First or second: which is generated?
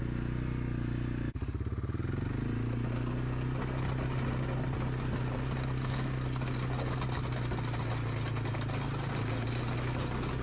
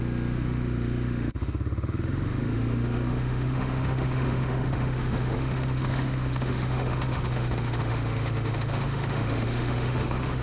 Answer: second